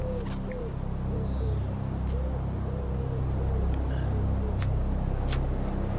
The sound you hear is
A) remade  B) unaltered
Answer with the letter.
B